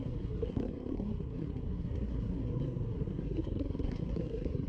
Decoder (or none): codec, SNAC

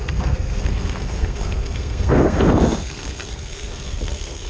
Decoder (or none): codec, SNAC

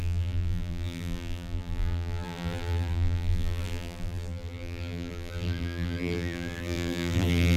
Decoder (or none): vocoder, BigVGAN v2